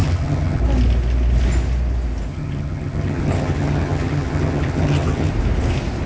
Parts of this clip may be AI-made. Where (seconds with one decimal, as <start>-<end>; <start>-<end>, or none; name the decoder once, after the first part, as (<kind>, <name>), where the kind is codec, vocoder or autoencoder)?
0.0-0.6 (vocoder, HiFi-GAN); 2.3-5.3